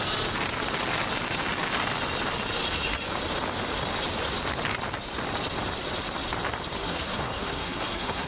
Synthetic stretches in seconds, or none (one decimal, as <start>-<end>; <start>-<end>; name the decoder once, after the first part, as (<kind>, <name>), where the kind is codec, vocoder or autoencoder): 6.8-8.3 (codec, SNAC)